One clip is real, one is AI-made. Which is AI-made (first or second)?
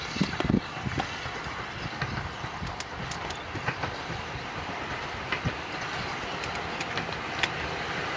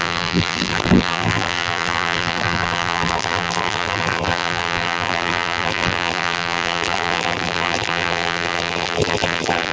second